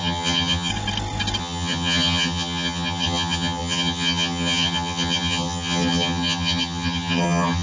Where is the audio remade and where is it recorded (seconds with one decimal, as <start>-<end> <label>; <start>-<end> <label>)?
0.0-0.7 remade; 0.7-1.4 recorded; 1.4-7.6 remade